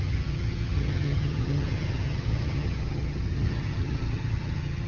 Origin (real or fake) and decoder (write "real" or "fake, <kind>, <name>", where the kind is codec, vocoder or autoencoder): fake, vocoder, HiFi-GAN